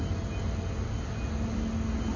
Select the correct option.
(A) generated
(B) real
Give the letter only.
B